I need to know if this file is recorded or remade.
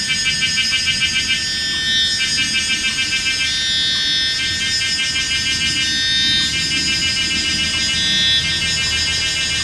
recorded